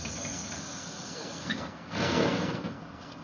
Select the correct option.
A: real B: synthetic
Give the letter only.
B